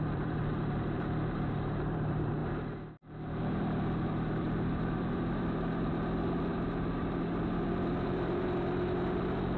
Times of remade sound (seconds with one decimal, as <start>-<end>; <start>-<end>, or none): 0.0-2.4; 3.4-9.6